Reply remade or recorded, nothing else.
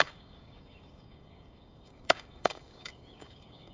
remade